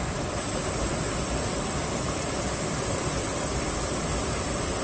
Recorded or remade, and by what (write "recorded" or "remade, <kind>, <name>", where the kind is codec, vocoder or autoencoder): remade, vocoder, BigVGAN v2